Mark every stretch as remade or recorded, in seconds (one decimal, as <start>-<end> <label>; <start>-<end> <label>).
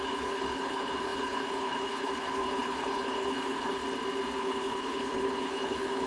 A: 0.0-3.8 remade; 3.8-4.4 recorded; 4.4-6.1 remade